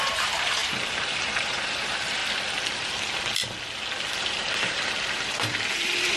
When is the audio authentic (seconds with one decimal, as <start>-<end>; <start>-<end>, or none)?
2.2-4.2